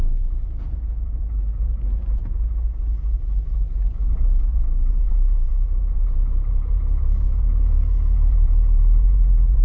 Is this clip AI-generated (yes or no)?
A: yes